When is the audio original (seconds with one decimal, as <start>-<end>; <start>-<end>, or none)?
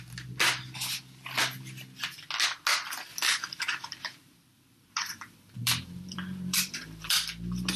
0.0-3.1; 7.1-7.8